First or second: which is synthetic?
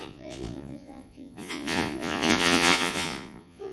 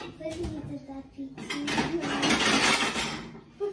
first